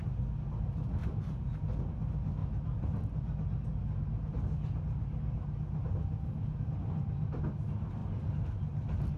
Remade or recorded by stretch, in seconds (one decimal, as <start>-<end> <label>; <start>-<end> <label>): 0.0-1.0 recorded; 1.0-1.6 remade; 1.6-9.2 recorded